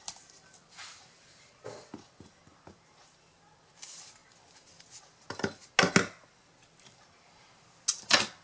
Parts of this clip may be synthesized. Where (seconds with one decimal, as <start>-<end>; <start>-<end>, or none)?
none